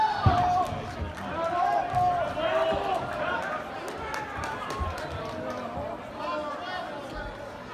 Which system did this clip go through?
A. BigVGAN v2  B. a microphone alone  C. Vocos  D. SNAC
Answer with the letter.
B